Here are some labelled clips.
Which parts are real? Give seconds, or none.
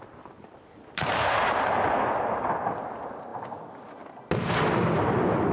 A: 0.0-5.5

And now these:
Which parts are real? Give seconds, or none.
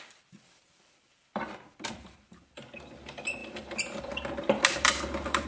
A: 3.4-4.4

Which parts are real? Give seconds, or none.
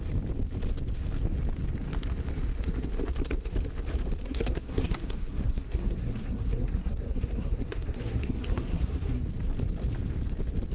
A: 0.0-4.2; 9.3-10.7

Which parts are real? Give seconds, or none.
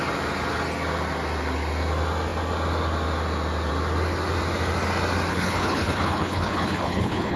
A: 0.0-5.3